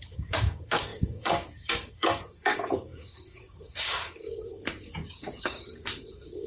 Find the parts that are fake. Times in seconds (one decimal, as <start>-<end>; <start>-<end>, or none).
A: 0.0-6.5